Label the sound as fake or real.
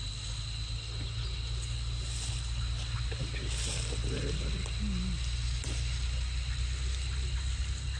real